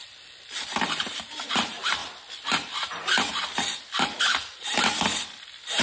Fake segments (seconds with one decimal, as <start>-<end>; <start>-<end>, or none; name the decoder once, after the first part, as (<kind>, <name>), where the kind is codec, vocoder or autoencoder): 0.9-2.0 (vocoder, BigVGAN v2)

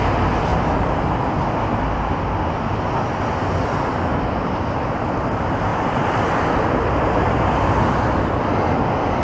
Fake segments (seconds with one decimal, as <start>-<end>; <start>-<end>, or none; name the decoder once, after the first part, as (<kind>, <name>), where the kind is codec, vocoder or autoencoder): none

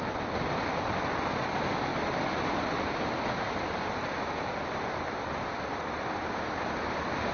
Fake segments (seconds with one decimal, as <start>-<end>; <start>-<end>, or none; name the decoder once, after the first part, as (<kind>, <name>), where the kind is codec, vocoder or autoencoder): none

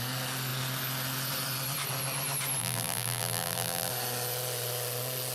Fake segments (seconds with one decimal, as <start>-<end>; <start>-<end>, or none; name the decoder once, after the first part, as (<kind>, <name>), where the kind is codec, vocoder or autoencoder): 2.6-3.9 (vocoder, BigVGAN v2)